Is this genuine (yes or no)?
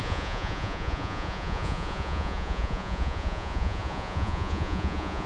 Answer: no